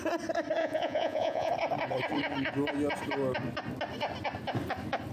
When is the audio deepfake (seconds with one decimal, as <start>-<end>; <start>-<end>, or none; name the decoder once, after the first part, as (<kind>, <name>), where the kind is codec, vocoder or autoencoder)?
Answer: 0.6-1.5 (vocoder, Vocos)